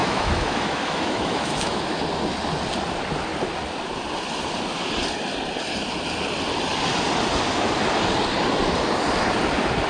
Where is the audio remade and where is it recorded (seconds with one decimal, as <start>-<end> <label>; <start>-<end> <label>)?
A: 0.0-2.0 remade; 2.0-9.9 recorded